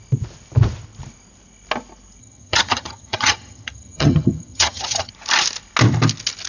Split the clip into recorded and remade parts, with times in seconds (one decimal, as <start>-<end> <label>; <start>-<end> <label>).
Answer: 0.0-2.2 recorded; 2.2-5.1 remade; 5.1-6.5 recorded

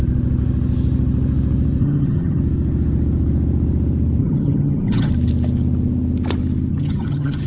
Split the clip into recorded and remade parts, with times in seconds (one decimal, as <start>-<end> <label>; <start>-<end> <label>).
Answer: 0.0-1.8 recorded; 1.8-2.4 remade; 2.4-4.2 recorded; 4.2-5.1 remade; 5.1-6.7 recorded; 6.7-7.5 remade

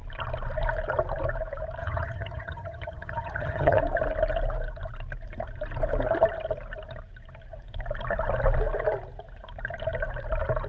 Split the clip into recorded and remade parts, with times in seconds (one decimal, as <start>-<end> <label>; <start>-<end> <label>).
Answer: 0.0-1.8 recorded; 1.8-3.8 remade; 3.8-10.7 recorded

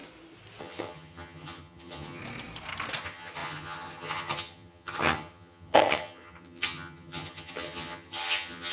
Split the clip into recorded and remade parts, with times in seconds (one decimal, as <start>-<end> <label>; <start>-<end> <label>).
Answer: 0.0-0.6 recorded; 0.6-2.2 remade; 2.2-3.0 recorded; 3.0-8.7 remade